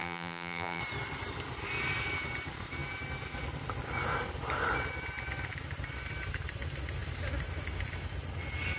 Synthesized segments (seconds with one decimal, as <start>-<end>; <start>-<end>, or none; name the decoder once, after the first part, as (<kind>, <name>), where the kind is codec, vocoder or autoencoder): 0.0-0.8 (vocoder, BigVGAN v2)